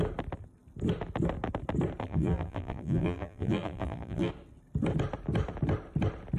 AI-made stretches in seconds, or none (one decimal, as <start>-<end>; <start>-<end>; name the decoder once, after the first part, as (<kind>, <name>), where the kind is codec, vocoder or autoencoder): 2.0-4.3 (vocoder, BigVGAN v2)